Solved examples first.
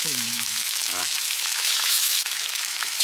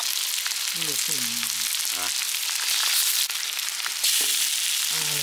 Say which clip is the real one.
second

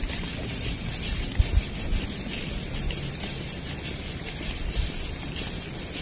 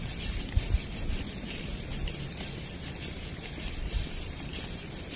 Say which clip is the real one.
first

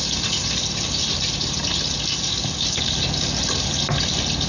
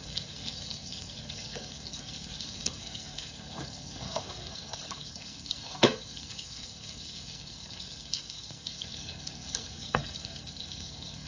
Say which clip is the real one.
first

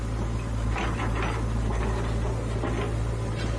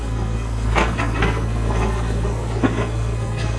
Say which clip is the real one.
first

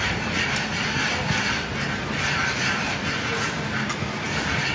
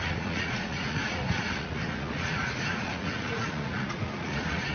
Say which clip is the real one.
first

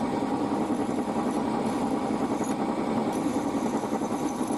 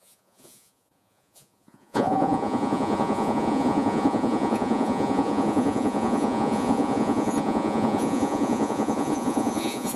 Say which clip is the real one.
first